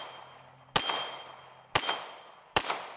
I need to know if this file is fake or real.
real